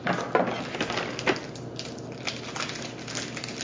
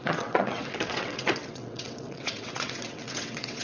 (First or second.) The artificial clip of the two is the second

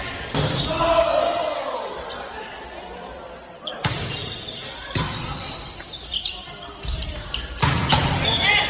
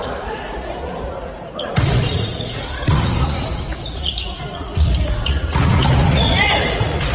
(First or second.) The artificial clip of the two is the second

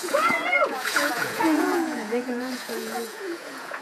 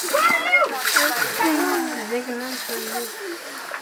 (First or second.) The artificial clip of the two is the first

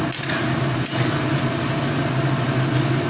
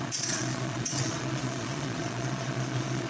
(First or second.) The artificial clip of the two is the second